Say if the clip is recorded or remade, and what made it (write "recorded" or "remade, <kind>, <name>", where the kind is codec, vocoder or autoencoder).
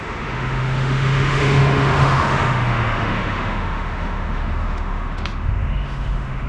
remade, autoencoder, DAC-VAE